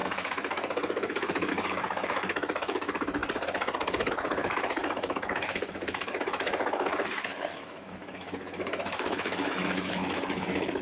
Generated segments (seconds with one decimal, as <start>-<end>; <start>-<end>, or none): 0.0-3.2; 4.1-10.8